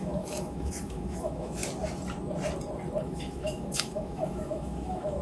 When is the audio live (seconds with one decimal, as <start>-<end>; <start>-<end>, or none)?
1.6-3.0

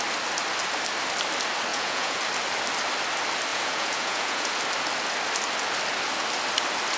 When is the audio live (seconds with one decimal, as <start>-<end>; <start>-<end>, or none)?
0.0-1.7; 2.2-3.5; 4.5-7.0

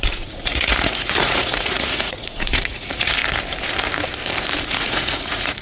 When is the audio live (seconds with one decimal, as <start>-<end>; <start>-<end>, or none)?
3.2-4.6

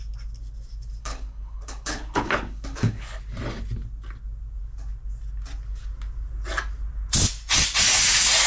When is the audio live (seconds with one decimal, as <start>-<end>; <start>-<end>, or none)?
0.0-1.0; 3.2-8.5

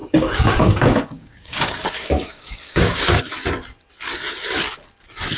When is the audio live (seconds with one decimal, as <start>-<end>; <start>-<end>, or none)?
3.2-5.4

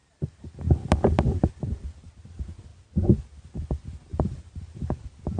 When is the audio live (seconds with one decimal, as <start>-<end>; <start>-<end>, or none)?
0.8-4.1; 4.9-5.4